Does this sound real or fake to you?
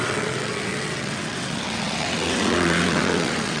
fake